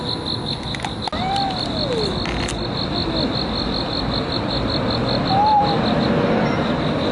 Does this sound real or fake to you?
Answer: real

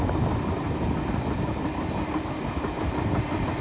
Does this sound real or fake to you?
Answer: real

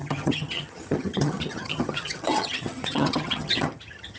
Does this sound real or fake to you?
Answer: fake